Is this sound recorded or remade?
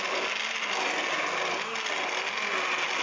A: recorded